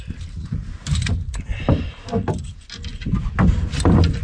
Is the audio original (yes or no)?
yes